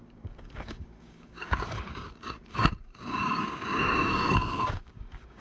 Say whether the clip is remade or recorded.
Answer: remade